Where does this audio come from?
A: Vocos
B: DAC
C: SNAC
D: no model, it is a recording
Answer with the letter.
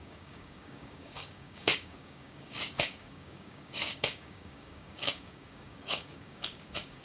B